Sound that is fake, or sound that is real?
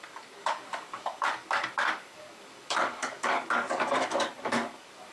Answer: fake